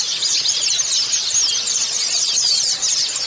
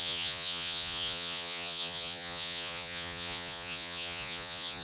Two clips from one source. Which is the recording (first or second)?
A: first